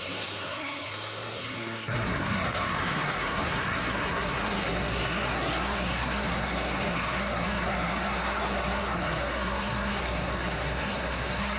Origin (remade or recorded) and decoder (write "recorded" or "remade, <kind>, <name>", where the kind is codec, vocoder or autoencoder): remade, codec, SNAC